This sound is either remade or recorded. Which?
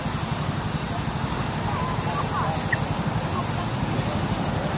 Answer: recorded